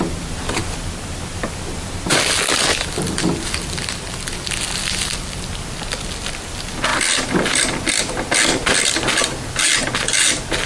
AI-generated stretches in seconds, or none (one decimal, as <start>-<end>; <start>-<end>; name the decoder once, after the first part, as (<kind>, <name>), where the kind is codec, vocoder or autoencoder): 0.6-2.2 (vocoder, BigVGAN v2); 6.9-7.9; 8.5-9.4